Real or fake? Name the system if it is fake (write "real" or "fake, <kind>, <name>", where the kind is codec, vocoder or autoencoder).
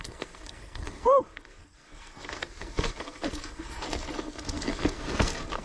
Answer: fake, codec, SNAC